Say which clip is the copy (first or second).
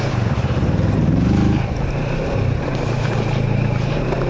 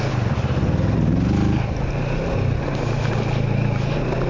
first